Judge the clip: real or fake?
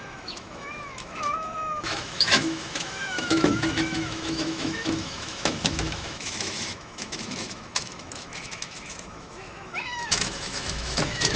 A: fake